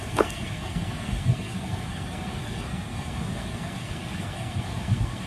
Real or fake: fake